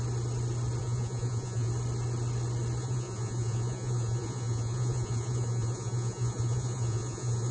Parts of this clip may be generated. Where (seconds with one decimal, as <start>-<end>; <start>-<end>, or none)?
0.8-1.7; 2.8-7.5